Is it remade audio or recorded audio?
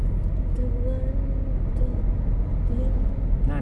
recorded